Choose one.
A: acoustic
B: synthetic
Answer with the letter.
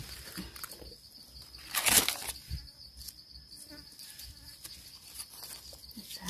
A